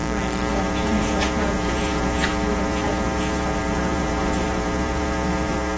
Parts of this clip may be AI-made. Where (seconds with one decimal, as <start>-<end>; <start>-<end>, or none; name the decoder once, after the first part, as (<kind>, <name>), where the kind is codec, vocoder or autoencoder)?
0.5-5.8 (vocoder, Vocos)